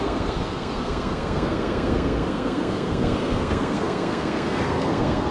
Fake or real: fake